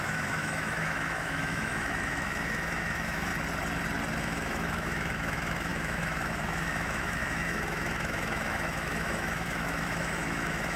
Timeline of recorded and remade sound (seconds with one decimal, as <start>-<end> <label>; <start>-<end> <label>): 0.0-3.3 remade; 3.3-4.2 recorded; 4.2-10.8 remade